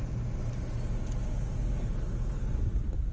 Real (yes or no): yes